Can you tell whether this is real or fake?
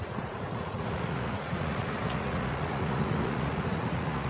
fake